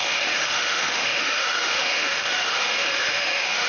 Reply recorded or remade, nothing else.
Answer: remade